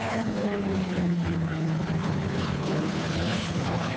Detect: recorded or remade remade